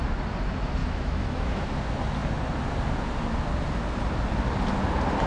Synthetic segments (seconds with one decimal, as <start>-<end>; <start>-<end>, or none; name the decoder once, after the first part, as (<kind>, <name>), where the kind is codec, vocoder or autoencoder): 0.8-1.7 (autoencoder, DAC-VAE)